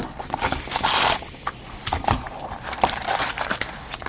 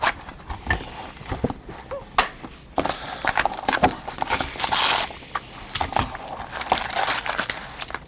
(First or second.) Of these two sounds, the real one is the second